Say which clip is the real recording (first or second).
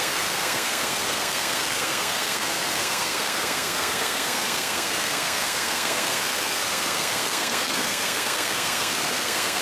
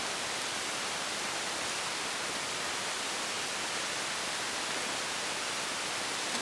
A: second